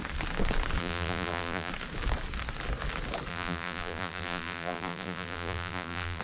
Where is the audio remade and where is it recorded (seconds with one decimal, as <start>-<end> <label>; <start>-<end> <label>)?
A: 0.0-0.8 recorded; 0.8-1.7 remade; 1.7-3.3 recorded; 3.3-6.2 remade